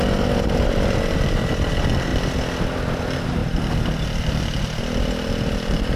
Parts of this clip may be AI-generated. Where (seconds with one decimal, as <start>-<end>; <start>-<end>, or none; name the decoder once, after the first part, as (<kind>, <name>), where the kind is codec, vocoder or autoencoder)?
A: none